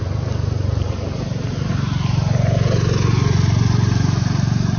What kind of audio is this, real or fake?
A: real